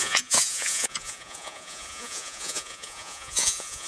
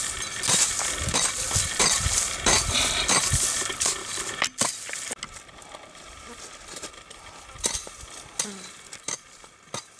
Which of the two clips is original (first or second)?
second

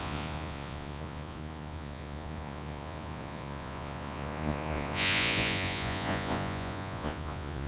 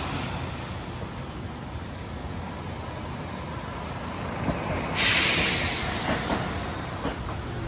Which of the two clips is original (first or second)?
second